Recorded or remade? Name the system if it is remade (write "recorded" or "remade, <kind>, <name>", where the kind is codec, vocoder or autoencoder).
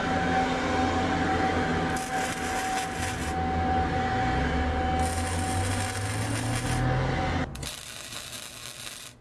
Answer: recorded